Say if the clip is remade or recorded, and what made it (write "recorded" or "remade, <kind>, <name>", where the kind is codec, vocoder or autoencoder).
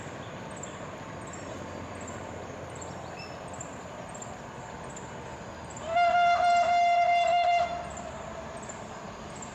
recorded